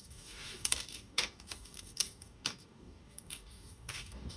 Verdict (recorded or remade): remade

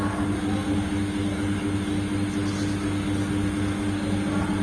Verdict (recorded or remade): recorded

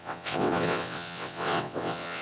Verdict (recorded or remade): remade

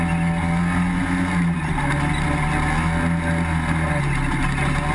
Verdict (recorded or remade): recorded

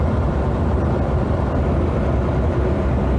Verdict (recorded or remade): recorded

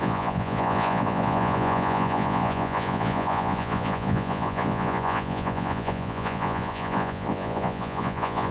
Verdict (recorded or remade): remade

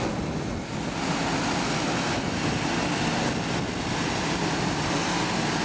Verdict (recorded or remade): recorded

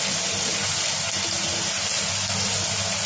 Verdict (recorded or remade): recorded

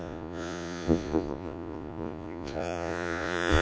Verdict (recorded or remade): remade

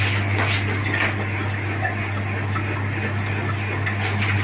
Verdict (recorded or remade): recorded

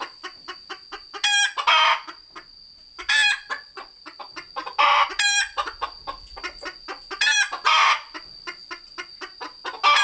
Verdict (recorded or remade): recorded